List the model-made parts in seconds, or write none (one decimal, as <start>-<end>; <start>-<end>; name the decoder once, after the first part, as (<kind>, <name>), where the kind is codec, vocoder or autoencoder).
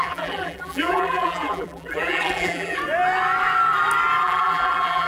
0.0-2.8 (vocoder, BigVGAN v2); 4.2-5.1